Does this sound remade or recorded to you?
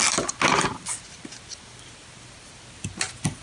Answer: recorded